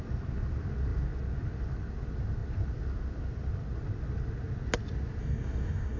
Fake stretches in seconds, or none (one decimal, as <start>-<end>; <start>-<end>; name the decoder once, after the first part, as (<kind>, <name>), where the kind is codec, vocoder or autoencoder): 5.2-6.0 (codec, DAC)